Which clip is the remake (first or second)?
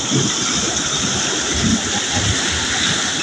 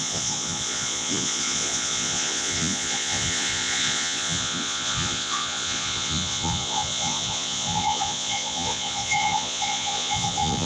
second